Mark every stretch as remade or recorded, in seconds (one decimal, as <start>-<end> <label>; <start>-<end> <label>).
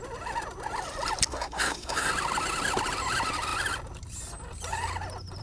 0.0-1.3 recorded; 1.3-2.1 remade; 2.1-5.4 recorded